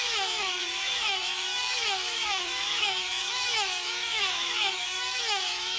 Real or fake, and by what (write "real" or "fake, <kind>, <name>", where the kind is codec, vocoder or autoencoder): fake, autoencoder, DAC-VAE